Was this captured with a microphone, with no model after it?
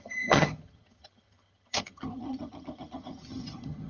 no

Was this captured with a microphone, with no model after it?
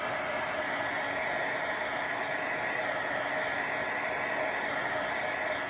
yes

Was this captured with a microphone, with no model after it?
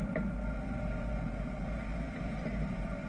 yes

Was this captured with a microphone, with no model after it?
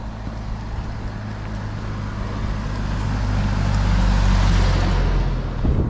yes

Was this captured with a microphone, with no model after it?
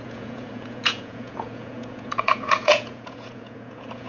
no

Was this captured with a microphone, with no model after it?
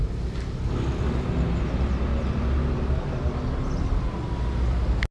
yes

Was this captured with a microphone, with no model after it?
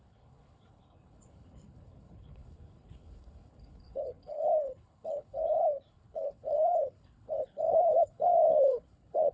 no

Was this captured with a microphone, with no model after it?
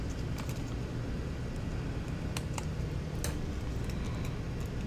yes